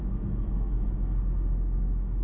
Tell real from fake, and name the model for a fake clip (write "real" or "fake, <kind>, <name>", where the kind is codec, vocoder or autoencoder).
fake, codec, SNAC